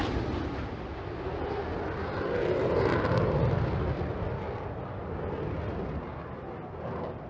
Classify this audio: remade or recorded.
recorded